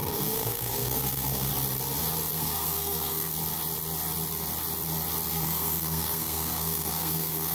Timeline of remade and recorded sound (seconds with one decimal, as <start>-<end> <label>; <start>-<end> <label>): 0.0-1.5 remade; 1.5-2.3 recorded; 2.3-3.3 remade; 3.3-5.3 recorded; 5.3-7.5 remade